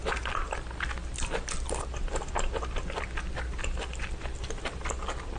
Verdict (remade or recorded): recorded